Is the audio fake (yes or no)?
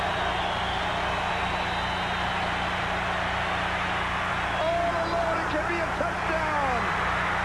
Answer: no